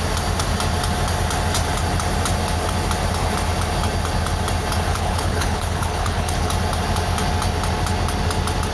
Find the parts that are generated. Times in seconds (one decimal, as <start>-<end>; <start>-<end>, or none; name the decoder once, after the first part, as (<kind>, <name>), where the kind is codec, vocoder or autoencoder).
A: 4.9-6.5 (codec, HILCodec)